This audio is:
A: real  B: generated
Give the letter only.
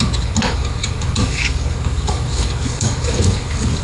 B